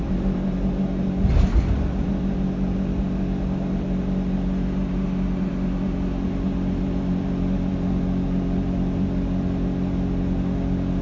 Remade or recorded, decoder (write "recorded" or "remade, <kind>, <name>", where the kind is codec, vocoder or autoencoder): recorded